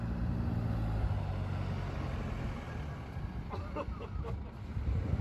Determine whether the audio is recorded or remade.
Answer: recorded